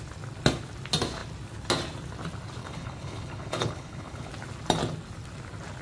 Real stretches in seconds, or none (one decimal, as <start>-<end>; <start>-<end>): 0.0-2.6; 4.3-5.8